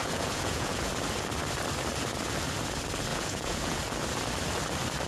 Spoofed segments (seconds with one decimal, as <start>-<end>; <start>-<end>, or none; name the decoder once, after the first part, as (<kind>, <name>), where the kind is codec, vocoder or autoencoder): 0.0-0.9 (vocoder, Vocos); 3.1-3.8